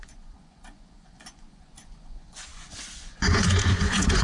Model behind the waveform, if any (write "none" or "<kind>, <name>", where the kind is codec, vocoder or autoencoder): vocoder, Vocos